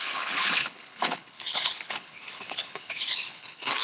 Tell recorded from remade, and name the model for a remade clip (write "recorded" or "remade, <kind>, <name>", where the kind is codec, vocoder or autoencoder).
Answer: remade, codec, HILCodec